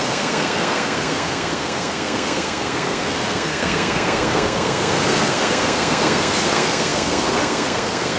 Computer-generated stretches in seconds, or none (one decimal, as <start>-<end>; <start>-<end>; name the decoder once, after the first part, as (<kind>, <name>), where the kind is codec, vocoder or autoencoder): 0.0-8.2 (codec, SNAC)